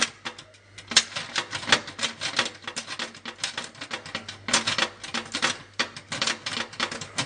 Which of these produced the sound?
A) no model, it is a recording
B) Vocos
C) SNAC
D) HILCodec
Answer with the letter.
A